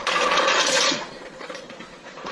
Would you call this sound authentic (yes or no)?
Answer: no